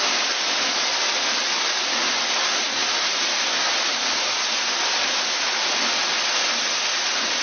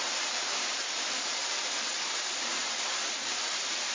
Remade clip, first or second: second